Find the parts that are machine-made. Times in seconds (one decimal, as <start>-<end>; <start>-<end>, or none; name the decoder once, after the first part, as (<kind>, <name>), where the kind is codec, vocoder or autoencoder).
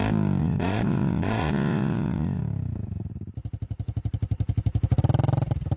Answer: 0.4-2.4 (vocoder, Vocos)